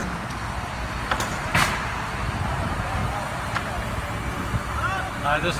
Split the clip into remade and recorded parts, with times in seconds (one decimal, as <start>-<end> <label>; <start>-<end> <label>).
0.0-0.6 recorded; 0.6-1.5 remade; 1.5-2.1 recorded; 2.1-3.0 remade; 3.0-5.0 recorded; 5.0-5.6 remade